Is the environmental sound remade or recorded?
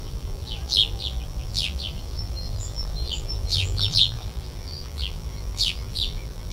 remade